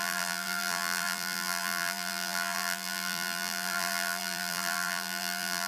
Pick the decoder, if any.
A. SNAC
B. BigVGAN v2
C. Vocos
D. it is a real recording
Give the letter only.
B